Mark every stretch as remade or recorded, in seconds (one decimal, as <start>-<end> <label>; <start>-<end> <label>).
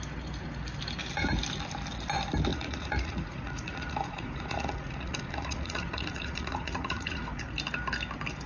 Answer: 0.0-2.5 recorded; 2.5-7.4 remade; 7.4-8.5 recorded